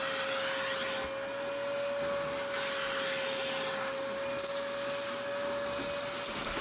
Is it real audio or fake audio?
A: real